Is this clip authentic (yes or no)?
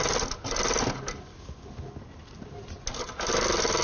yes